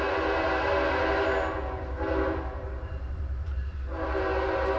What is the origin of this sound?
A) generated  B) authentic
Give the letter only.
B